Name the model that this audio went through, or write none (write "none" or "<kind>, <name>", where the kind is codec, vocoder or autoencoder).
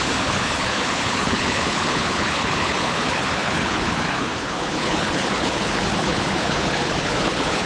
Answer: codec, HILCodec